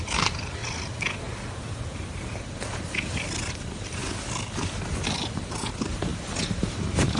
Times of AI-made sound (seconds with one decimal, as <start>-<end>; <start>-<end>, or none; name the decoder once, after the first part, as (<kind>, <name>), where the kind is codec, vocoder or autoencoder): 0.0-0.6 (vocoder, BigVGAN v2); 3.5-4.0; 5.4-7.2